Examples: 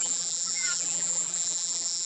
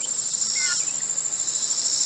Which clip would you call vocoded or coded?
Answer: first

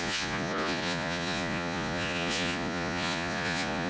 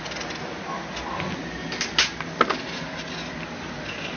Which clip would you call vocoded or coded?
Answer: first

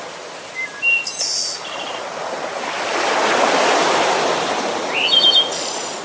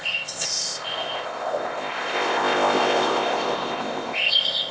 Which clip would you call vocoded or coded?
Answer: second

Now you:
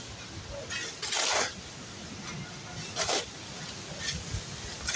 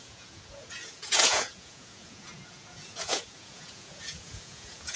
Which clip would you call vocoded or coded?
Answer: second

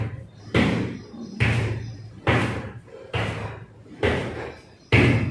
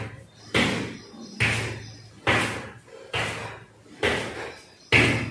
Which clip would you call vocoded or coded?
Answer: first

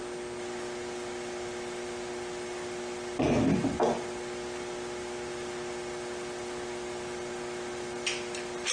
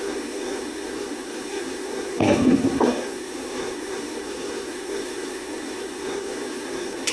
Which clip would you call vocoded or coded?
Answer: second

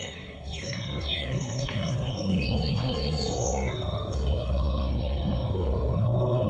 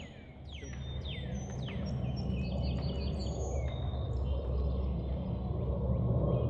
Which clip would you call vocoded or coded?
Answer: first